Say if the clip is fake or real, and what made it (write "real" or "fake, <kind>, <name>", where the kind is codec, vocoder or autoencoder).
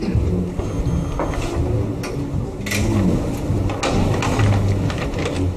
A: real